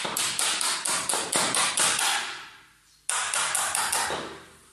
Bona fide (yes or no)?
yes